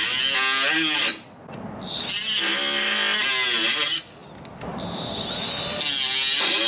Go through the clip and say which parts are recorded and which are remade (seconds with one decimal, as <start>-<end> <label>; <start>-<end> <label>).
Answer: 0.0-6.7 recorded